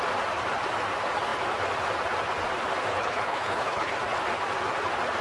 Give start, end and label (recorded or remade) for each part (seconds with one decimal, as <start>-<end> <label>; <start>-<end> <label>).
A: 0.0-2.9 recorded; 2.9-3.9 remade; 3.9-5.2 recorded